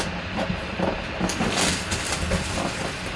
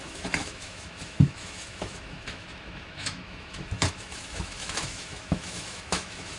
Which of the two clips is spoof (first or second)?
second